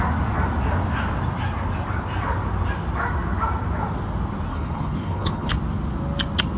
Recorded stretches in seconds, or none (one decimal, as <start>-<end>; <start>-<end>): 0.0-4.5; 5.5-6.6